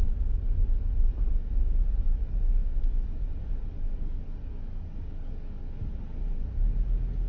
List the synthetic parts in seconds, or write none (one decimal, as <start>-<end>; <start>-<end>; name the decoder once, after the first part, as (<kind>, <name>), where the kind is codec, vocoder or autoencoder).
3.8-5.9 (codec, DAC)